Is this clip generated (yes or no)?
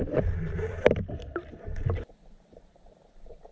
no